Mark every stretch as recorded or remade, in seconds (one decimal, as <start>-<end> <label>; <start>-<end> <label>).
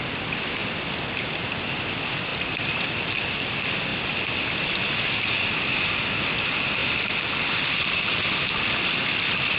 0.0-6.8 recorded; 6.8-7.4 remade; 7.4-9.6 recorded